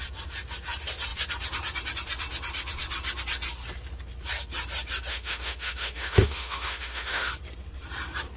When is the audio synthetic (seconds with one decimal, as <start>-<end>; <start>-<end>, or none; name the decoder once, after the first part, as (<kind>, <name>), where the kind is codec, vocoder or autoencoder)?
5.1-7.3 (autoencoder, DAC-VAE)